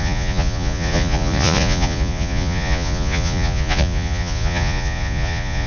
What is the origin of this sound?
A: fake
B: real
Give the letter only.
A